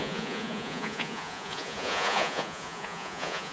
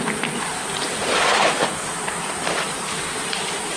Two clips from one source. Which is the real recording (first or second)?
second